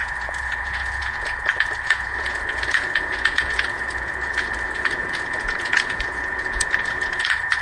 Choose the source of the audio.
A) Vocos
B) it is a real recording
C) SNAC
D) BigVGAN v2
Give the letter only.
A